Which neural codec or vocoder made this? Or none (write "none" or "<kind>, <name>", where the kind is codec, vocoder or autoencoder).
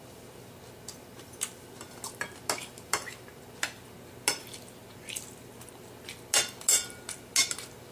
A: none